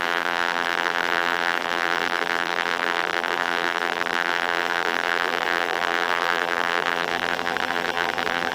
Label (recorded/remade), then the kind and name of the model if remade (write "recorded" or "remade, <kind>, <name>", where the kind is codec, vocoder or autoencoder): remade, vocoder, BigVGAN v2